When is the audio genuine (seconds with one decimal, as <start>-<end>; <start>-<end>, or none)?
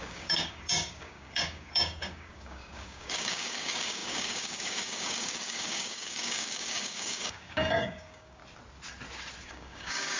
8.4-9.5